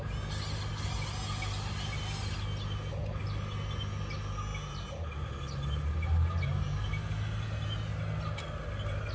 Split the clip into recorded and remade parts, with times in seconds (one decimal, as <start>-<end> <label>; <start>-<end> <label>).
0.0-9.1 recorded